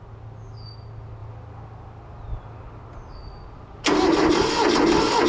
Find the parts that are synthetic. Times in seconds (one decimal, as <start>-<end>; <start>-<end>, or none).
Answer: none